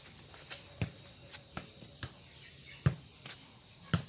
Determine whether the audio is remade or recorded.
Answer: recorded